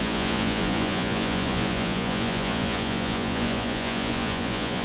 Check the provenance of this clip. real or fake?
fake